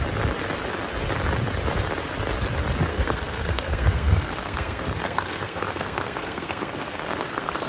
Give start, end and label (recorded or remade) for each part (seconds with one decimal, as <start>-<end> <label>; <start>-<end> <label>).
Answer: 0.0-2.9 recorded; 2.9-7.7 remade